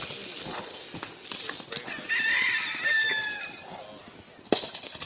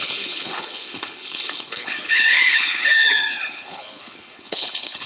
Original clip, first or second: first